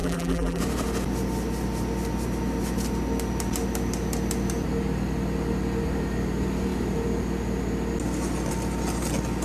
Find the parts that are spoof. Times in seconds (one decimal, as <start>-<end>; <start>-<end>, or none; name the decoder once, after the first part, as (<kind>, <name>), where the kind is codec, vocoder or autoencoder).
0.0-0.6 (vocoder, BigVGAN v2)